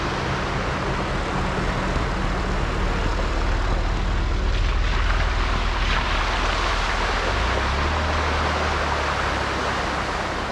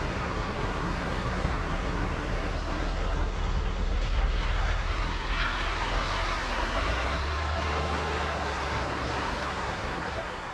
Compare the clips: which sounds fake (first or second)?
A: second